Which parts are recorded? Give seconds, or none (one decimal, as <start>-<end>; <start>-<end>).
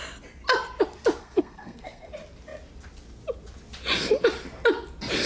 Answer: 0.0-1.2; 2.1-5.3